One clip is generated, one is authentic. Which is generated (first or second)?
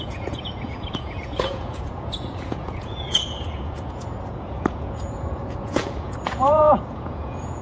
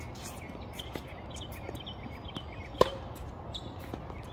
first